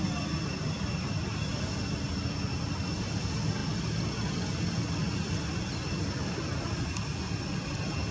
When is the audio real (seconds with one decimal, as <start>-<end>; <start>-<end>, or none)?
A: 0.0-8.1